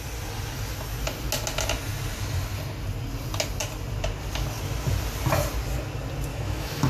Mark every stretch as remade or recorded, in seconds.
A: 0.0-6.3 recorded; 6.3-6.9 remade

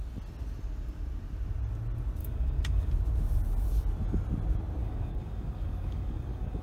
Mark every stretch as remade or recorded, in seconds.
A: 0.0-2.2 recorded; 2.2-2.9 remade; 2.9-4.8 recorded; 4.8-6.6 remade

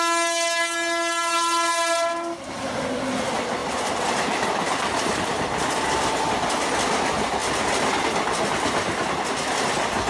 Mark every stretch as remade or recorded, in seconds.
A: 0.0-3.6 recorded; 3.6-6.5 remade; 6.5-10.1 recorded

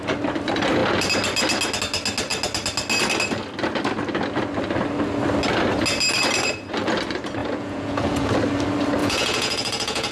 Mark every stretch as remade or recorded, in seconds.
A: 0.0-7.4 recorded; 7.4-8.3 remade; 8.3-9.0 recorded; 9.0-10.1 remade

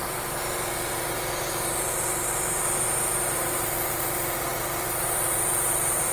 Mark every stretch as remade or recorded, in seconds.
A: 0.0-4.5 remade; 4.5-6.1 recorded